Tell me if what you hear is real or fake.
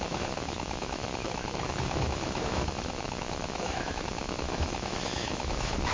fake